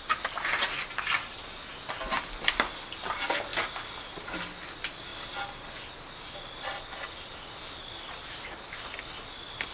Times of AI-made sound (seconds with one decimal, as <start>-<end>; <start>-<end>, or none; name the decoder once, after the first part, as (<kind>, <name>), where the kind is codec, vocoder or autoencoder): none